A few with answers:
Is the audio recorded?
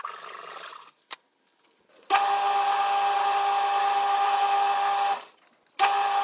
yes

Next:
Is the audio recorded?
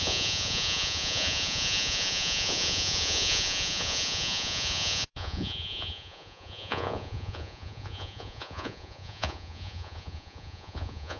no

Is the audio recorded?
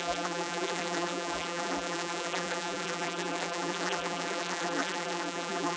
no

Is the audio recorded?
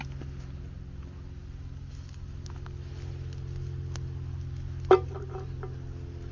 yes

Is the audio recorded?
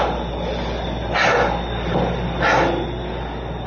yes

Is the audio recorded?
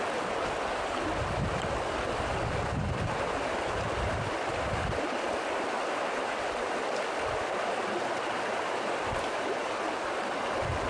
yes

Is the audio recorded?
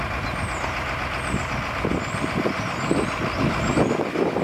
yes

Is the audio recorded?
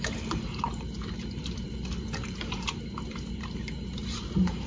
no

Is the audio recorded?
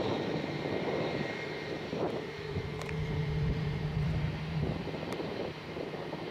no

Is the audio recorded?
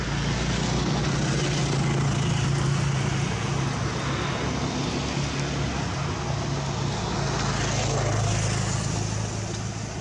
yes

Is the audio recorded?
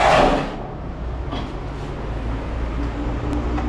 yes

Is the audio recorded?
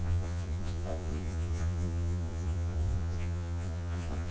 no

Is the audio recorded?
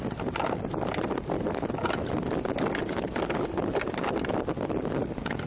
yes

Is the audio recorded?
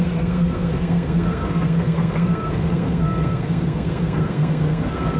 no